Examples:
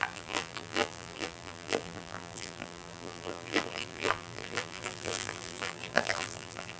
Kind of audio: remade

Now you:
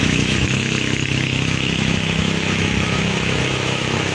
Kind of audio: remade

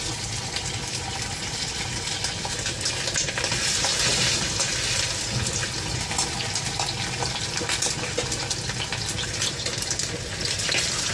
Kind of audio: recorded